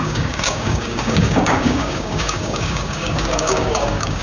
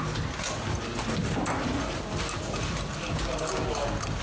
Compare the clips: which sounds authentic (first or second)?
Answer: second